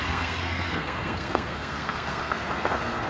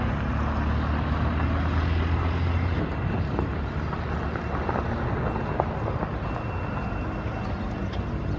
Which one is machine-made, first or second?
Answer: first